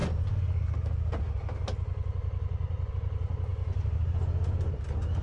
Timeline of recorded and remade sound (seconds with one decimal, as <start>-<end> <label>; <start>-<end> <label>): 0.0-5.2 recorded